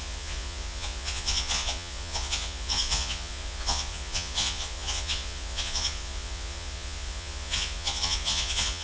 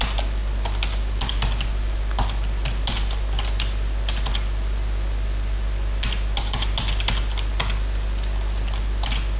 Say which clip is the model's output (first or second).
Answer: first